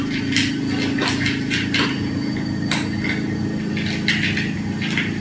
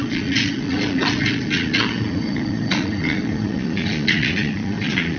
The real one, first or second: first